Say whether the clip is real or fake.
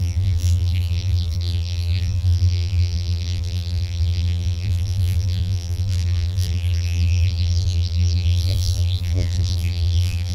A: fake